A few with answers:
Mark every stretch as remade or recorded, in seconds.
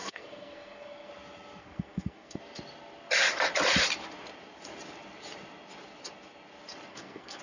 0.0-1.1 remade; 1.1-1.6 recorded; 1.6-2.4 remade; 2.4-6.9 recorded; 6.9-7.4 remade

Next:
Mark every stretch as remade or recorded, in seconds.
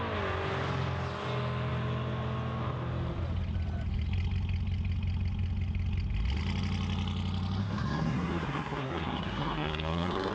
0.0-7.6 recorded; 7.6-10.3 remade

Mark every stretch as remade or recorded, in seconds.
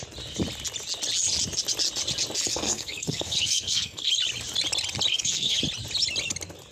0.0-2.5 recorded; 2.5-4.1 remade; 4.1-5.1 recorded; 5.1-5.6 remade; 5.6-6.7 recorded